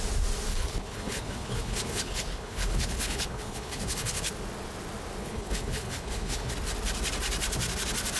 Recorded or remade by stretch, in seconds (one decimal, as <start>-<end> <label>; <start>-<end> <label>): 0.0-0.5 recorded; 0.5-4.3 remade; 4.3-5.2 recorded; 5.2-6.5 remade; 6.5-8.2 recorded